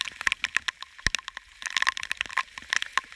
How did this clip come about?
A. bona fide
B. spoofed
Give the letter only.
A